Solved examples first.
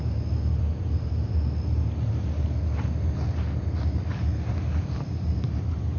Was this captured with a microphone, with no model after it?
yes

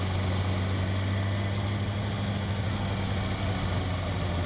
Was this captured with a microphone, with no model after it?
yes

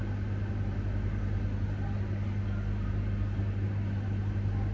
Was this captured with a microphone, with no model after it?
yes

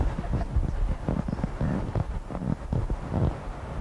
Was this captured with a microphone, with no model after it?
yes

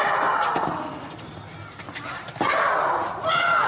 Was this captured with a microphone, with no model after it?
yes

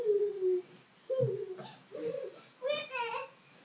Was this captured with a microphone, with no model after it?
yes